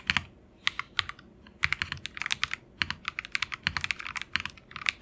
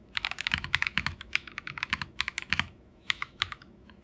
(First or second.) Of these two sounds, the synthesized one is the second